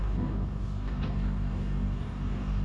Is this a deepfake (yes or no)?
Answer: yes